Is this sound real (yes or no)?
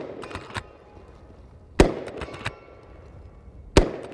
yes